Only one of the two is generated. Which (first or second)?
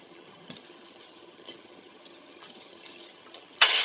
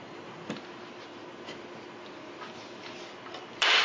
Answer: first